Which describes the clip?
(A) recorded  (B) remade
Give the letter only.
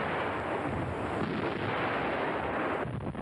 A